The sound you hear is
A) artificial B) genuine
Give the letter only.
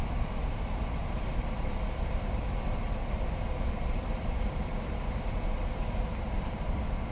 A